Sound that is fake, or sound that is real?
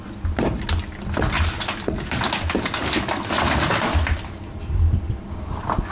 real